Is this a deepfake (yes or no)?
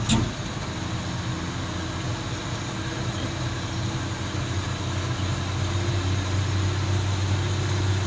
no